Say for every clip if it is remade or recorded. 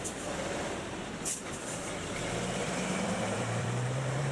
remade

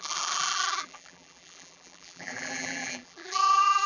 remade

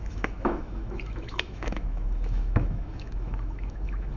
remade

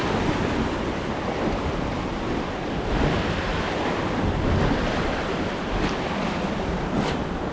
recorded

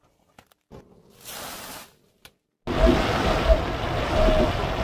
recorded